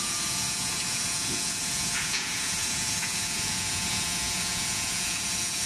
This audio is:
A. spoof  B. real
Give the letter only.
A